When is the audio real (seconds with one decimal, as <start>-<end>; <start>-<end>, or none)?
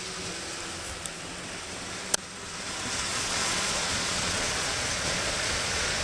0.0-3.1